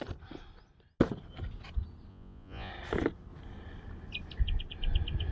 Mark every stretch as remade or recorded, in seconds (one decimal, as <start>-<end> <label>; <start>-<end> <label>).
0.0-2.1 recorded; 2.1-2.7 remade; 2.7-5.3 recorded